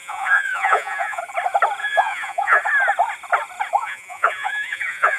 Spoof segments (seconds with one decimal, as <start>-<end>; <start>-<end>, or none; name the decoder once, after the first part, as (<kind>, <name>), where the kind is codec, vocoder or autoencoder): 0.0-1.2 (vocoder, Vocos); 1.8-2.6; 3.8-5.2